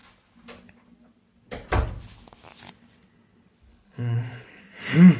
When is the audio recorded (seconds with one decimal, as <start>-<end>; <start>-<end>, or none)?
0.0-3.7; 4.6-5.2